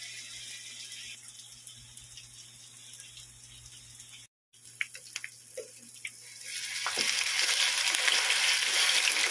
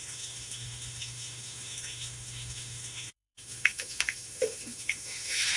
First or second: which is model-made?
second